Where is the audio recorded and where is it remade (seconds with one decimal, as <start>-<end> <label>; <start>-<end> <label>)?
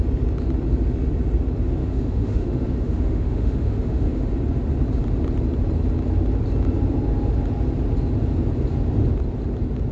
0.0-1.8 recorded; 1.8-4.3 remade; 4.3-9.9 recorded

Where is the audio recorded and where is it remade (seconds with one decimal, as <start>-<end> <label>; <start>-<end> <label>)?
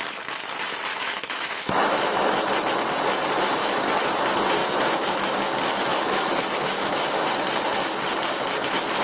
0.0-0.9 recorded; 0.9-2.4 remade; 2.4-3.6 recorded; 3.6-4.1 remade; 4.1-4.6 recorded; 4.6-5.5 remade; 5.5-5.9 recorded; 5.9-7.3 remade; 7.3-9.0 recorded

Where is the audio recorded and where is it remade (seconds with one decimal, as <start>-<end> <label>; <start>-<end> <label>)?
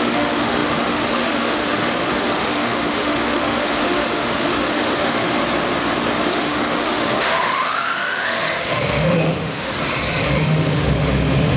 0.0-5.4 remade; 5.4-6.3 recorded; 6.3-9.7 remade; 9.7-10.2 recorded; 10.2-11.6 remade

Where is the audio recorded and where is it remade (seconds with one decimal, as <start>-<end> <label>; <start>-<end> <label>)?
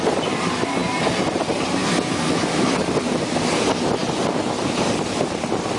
0.0-5.8 recorded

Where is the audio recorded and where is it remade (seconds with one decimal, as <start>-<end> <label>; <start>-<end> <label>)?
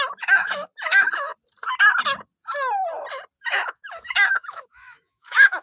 0.0-1.3 remade; 1.3-3.4 recorded; 3.4-5.6 remade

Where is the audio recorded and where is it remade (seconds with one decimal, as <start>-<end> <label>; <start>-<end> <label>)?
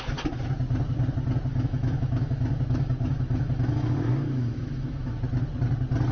0.0-1.5 recorded; 1.5-5.2 remade; 5.2-6.1 recorded